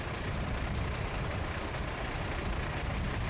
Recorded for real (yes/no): yes